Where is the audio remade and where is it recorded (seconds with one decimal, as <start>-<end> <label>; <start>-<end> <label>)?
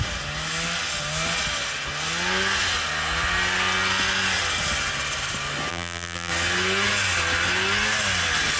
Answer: 0.0-5.7 recorded; 5.7-6.3 remade; 6.3-8.6 recorded